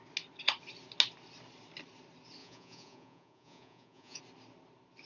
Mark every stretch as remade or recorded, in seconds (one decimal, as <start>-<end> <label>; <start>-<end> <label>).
0.0-2.4 recorded; 2.4-4.2 remade; 4.2-5.1 recorded